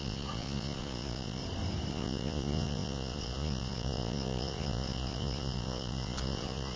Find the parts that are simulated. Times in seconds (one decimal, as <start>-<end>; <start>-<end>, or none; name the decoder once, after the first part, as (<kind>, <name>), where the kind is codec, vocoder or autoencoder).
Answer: 0.0-1.4 (vocoder, Vocos); 1.9-6.8

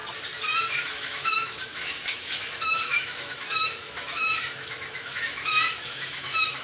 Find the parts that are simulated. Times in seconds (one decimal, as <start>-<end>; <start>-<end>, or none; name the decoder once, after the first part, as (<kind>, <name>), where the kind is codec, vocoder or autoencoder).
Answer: 0.7-6.6 (autoencoder, DAC-VAE)

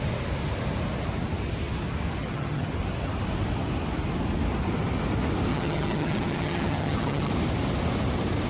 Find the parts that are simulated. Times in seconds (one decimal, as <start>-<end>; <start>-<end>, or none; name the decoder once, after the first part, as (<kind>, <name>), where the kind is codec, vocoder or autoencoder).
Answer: 2.2-2.7 (vocoder, HiFi-GAN); 5.5-7.3

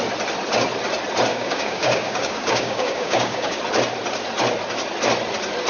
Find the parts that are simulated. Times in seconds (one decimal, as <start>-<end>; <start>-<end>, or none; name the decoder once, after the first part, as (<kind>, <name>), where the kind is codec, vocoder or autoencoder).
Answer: 1.3-3.6 (codec, DAC)

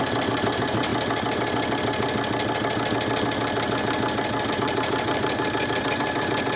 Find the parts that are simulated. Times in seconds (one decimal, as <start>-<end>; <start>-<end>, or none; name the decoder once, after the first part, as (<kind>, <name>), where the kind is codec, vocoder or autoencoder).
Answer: 0.0-0.9 (vocoder, BigVGAN v2); 4.5-6.6

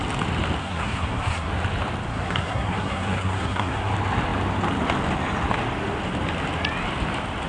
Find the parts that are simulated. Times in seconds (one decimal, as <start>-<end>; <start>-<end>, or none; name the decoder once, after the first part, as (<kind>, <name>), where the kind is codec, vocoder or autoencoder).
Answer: 0.6-1.5 (codec, SNAC); 2.1-3.9

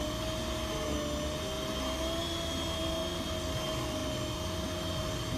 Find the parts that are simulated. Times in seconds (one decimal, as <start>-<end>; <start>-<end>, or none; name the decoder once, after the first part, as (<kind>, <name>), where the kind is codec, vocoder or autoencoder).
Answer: none